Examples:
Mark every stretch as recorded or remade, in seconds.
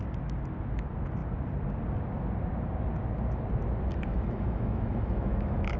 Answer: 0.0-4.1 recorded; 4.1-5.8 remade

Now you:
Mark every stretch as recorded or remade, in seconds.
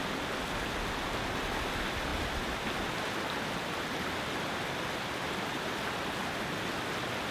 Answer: 0.0-7.3 recorded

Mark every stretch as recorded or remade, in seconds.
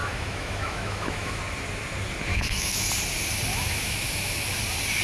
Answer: 0.0-1.4 remade; 1.4-2.3 recorded; 2.3-2.9 remade; 2.9-3.5 recorded; 3.5-4.4 remade; 4.4-5.0 recorded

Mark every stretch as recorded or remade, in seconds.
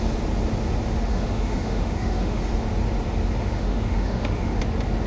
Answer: 0.0-1.1 recorded; 1.1-2.4 remade; 2.4-3.4 recorded; 3.4-4.6 remade; 4.6-5.1 recorded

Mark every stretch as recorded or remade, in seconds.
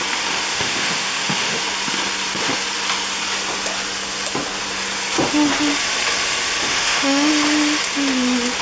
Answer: 0.0-0.5 recorded; 0.5-1.6 remade; 1.6-6.6 recorded; 6.6-7.3 remade; 7.3-8.6 recorded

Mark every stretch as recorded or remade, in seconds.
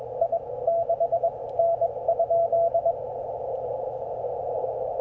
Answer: 0.0-5.0 recorded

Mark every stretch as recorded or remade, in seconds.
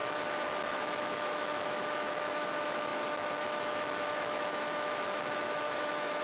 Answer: 0.0-0.7 recorded; 0.7-6.2 remade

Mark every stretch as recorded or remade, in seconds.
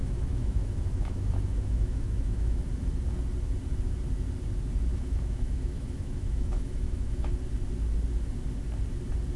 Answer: 0.0-2.6 remade; 2.6-4.9 recorded; 4.9-7.3 remade; 7.3-9.4 recorded